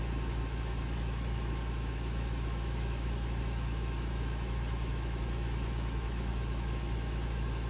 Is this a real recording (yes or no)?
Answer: no